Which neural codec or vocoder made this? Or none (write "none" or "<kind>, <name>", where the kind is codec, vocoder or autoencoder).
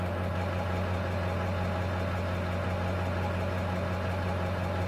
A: none